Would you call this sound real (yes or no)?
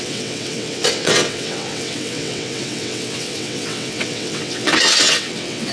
no